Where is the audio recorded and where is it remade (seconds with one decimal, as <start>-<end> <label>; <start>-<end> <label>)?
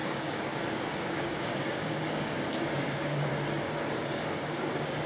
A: 0.0-3.3 remade; 3.3-3.9 recorded; 3.9-5.1 remade